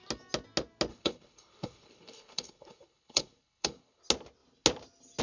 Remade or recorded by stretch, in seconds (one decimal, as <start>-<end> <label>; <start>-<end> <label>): 0.0-0.9 recorded; 0.9-4.0 remade; 4.0-5.2 recorded